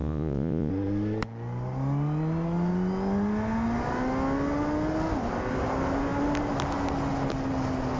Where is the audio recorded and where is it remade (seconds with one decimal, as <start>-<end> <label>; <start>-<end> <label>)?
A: 0.0-0.7 remade; 0.7-8.0 recorded